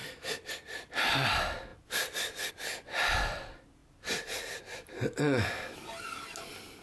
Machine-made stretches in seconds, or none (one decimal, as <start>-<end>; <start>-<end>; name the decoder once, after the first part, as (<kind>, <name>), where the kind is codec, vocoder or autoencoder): 0.0-0.5 (vocoder, BigVGAN v2); 3.8-4.6